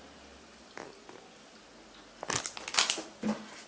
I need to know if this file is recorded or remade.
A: recorded